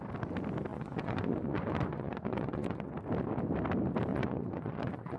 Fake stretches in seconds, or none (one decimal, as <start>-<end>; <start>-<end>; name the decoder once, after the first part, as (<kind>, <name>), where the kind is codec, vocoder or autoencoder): 0.7-2.9 (vocoder, Vocos); 4.1-5.2